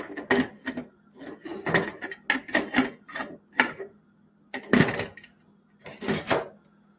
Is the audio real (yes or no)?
yes